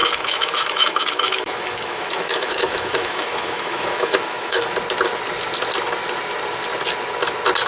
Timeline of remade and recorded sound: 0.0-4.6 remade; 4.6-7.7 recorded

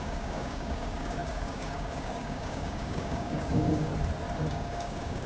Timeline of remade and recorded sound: 0.0-3.9 remade; 3.9-4.5 recorded; 4.5-5.3 remade

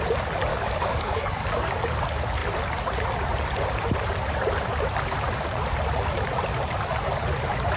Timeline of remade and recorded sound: 0.0-0.5 recorded; 0.5-1.7 remade; 1.7-7.8 recorded

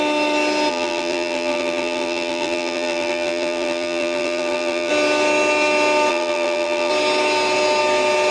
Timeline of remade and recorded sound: 0.0-0.7 recorded; 0.7-4.9 remade; 4.9-6.1 recorded; 6.1-6.9 remade; 6.9-8.3 recorded

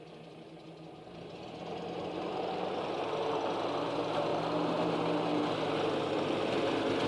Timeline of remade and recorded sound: 0.0-7.1 recorded